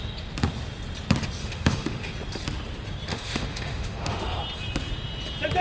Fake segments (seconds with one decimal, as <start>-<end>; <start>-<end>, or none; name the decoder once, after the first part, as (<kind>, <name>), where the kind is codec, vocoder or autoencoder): 1.4-2.1 (autoencoder, DAC-VAE); 3.1-4.4